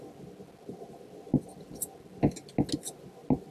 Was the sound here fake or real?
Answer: real